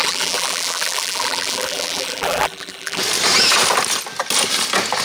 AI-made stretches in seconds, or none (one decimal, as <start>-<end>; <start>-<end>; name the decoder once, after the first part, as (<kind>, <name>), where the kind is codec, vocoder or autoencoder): 0.0-3.0 (vocoder, BigVGAN v2)